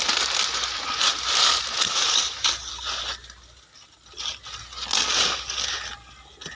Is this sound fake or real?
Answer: real